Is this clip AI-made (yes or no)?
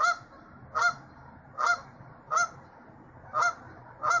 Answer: no